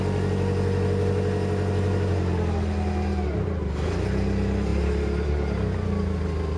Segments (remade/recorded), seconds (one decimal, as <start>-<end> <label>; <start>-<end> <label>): 0.0-6.6 recorded